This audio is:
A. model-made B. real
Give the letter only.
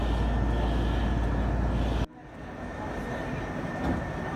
B